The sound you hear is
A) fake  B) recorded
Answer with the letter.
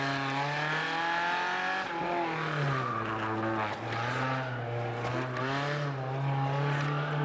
B